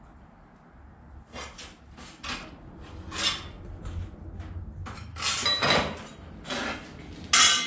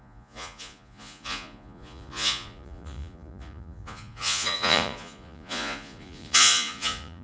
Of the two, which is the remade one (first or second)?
second